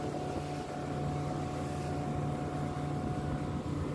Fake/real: real